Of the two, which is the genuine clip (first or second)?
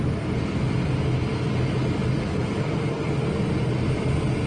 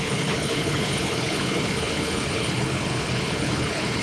first